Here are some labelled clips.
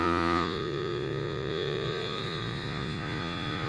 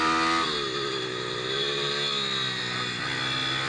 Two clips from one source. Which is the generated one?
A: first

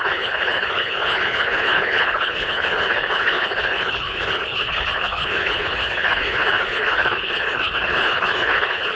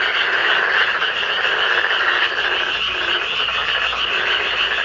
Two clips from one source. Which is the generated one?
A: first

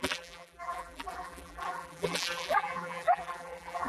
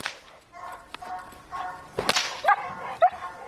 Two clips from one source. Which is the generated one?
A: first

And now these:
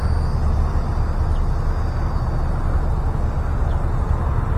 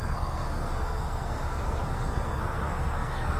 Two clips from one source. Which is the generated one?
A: second